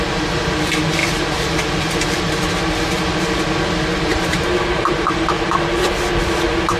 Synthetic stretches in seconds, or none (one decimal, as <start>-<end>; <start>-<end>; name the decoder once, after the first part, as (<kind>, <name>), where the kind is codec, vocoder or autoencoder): 4.1-5.5 (vocoder, BigVGAN v2)

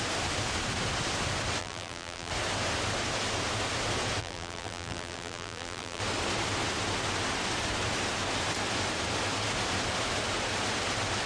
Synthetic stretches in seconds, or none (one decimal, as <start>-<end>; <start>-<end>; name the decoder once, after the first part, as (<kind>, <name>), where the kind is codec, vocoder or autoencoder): 1.6-2.3 (vocoder, BigVGAN v2); 4.2-6.0

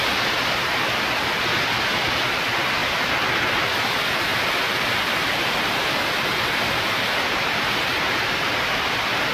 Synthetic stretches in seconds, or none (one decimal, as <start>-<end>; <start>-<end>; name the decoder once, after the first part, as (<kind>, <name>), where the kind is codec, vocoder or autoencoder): 4.3-8.2 (vocoder, BigVGAN v2)

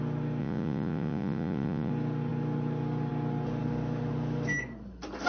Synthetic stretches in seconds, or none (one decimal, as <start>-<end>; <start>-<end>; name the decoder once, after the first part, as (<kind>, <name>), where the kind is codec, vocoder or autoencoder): 0.4-1.9 (vocoder, Vocos)

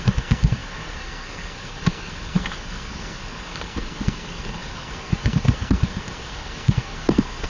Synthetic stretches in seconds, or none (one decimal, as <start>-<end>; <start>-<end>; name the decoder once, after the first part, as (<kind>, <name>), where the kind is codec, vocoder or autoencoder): 0.0-7.5 (codec, SNAC)

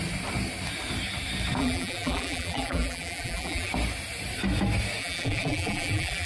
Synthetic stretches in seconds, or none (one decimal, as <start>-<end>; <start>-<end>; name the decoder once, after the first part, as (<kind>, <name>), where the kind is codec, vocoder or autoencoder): 1.6-3.7 (vocoder, BigVGAN v2); 5.0-6.3

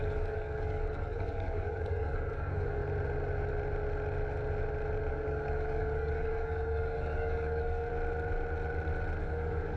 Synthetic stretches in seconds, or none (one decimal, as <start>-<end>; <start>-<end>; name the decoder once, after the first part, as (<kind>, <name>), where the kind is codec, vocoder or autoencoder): 0.0-2.8 (codec, DAC); 5.1-7.9; 9.2-9.8

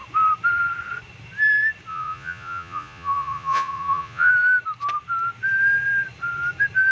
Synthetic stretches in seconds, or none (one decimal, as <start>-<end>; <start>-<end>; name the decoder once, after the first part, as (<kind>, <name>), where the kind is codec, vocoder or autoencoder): 1.9-4.3 (vocoder, Vocos)